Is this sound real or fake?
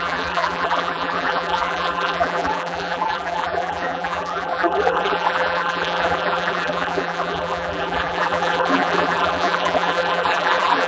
fake